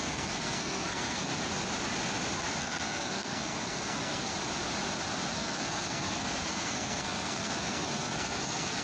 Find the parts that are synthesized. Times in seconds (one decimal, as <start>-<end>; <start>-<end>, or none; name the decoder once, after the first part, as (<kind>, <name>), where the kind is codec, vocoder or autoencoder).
0.0-1.3 (codec, SNAC); 2.6-4.3; 5.3-8.8